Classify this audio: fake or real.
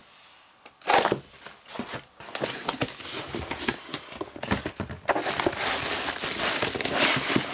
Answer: real